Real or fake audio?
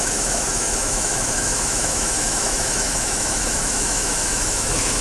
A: fake